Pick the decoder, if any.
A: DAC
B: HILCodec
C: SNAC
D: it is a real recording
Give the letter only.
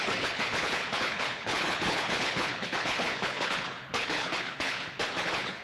B